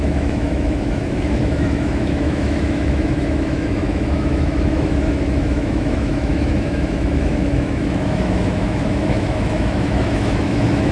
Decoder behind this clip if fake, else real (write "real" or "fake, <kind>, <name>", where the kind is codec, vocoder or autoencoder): fake, autoencoder, DAC-VAE